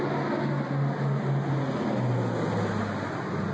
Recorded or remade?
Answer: recorded